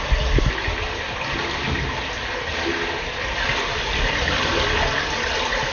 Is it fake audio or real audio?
real